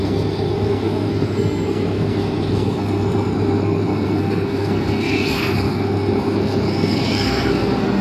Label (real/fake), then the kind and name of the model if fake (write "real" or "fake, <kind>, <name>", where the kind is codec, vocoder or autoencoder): fake, codec, SNAC